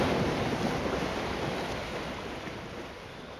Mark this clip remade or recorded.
recorded